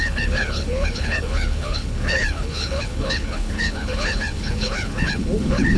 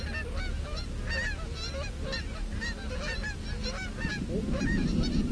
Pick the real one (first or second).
second